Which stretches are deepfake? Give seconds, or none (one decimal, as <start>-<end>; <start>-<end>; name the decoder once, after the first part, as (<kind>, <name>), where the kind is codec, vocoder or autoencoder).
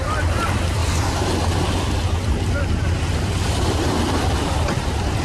none